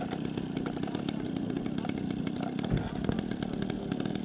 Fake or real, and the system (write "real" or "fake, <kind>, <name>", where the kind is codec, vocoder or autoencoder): real